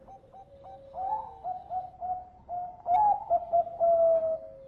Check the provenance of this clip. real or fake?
real